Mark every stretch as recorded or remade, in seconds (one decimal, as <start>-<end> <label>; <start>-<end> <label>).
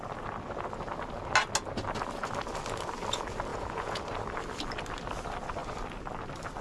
0.0-3.5 recorded; 3.5-4.0 remade; 4.0-6.6 recorded